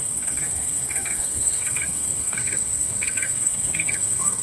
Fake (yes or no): yes